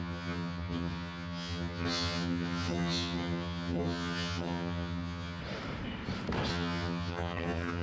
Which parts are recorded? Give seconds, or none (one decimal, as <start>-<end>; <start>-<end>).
5.4-6.5